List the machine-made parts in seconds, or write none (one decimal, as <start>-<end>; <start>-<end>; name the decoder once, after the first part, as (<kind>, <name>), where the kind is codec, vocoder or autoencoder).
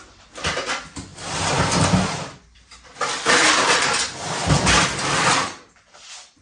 0.0-1.1 (vocoder, BigVGAN v2); 2.1-6.4